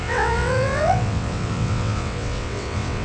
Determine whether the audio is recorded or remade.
remade